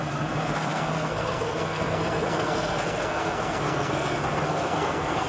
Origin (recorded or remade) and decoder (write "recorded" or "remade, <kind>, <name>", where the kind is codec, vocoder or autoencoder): remade, codec, SNAC